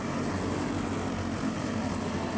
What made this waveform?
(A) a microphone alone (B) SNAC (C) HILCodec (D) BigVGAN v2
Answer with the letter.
A